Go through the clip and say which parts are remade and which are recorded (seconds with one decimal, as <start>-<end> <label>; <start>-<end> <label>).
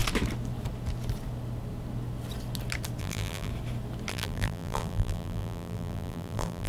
0.0-3.0 recorded; 3.0-3.5 remade; 3.5-4.1 recorded; 4.1-6.7 remade